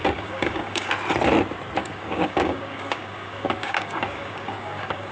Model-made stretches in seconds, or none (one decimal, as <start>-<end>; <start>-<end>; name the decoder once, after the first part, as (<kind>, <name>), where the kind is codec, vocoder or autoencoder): 0.0-0.9 (codec, DAC); 1.8-5.1